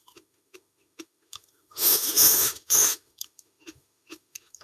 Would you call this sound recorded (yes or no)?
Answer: no